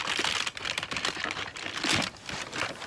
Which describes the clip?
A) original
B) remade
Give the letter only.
A